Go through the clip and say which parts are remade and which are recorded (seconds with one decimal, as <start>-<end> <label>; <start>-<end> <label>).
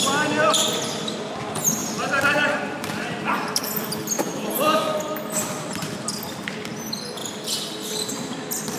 0.0-1.8 recorded; 1.8-6.7 remade; 6.7-8.8 recorded